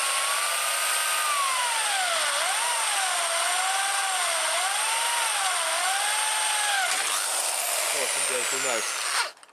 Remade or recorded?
recorded